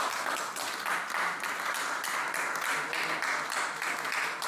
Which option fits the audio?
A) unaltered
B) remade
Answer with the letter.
A